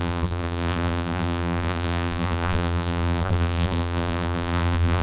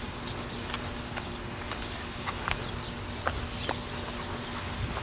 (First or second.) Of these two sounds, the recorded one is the second